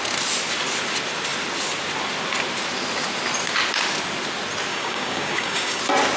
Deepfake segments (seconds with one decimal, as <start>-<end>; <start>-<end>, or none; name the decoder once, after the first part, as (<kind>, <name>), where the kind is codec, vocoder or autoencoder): 4.7-5.8 (codec, DAC)